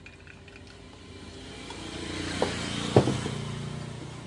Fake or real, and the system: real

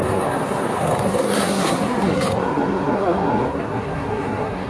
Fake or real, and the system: fake, codec, SNAC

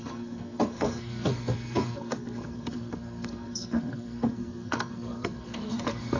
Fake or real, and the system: fake, codec, SNAC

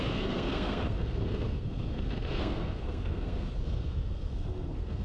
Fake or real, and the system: fake, codec, SNAC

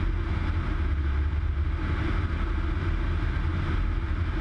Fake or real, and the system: real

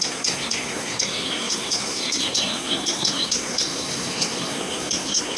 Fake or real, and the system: fake, codec, SNAC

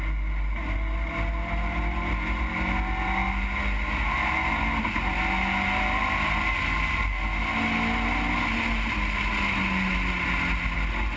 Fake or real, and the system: real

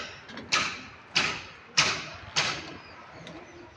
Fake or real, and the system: real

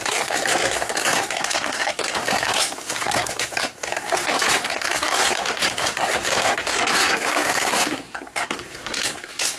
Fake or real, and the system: fake, codec, SNAC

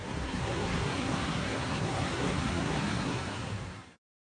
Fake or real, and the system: fake, codec, SNAC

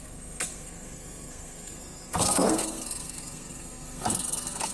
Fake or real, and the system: fake, codec, SNAC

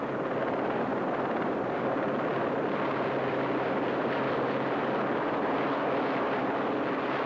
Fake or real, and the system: real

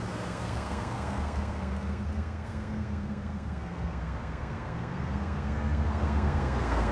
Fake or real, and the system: fake, codec, SNAC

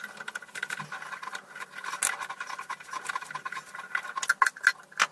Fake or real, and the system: real